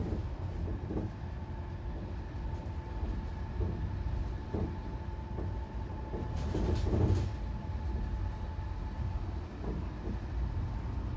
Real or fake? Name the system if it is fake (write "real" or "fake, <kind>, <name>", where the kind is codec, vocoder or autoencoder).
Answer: real